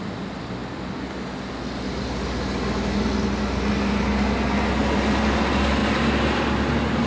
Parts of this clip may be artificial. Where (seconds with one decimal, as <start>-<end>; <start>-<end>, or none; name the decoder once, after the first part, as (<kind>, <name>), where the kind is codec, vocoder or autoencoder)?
none